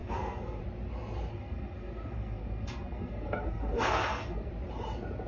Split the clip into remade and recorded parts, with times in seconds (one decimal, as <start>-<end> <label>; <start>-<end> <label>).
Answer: 0.0-0.6 remade; 0.6-1.3 recorded; 1.3-4.5 remade; 4.5-5.3 recorded

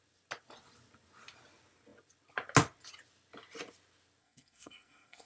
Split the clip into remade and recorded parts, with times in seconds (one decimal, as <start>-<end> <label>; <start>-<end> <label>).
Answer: 0.0-4.2 recorded; 4.2-5.3 remade